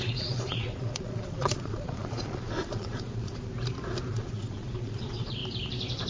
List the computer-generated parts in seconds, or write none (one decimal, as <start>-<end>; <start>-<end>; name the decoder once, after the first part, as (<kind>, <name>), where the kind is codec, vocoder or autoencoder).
0.0-3.5 (vocoder, Vocos); 4.1-5.4